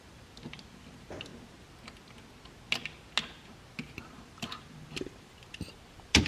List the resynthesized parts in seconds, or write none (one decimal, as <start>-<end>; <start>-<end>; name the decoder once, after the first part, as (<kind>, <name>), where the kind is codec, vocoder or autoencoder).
0.0-1.3 (vocoder, BigVGAN v2); 4.0-6.3